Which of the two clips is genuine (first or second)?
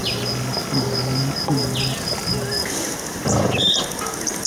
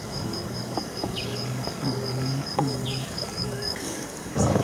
first